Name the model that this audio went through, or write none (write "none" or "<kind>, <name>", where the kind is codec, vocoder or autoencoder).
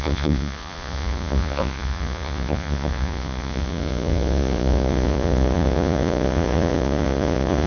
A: vocoder, Vocos